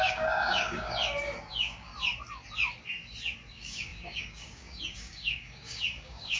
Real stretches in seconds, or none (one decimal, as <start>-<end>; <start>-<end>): 1.0-1.5; 1.9-3.5